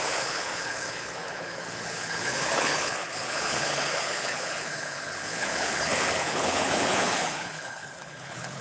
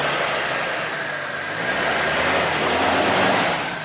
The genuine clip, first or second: second